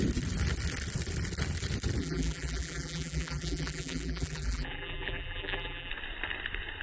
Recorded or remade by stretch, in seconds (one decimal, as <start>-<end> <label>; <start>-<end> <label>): 0.0-2.0 recorded; 2.0-5.9 remade; 5.9-6.8 recorded